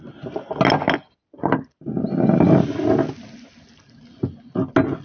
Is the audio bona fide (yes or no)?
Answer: yes